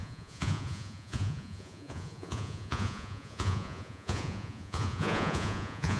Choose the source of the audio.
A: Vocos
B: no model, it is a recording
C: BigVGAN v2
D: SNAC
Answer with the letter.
A